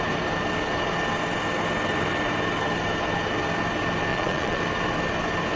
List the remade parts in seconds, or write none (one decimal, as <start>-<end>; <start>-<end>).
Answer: 4.1-4.6